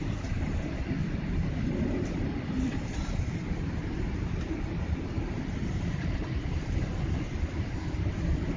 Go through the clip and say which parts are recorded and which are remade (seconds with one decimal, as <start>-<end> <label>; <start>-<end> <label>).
0.0-1.0 remade; 1.0-2.1 recorded; 2.1-8.6 remade